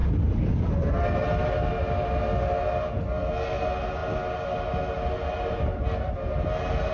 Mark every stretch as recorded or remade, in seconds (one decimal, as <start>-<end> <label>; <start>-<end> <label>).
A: 0.0-0.9 remade; 0.9-6.9 recorded